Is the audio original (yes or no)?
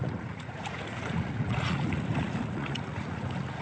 no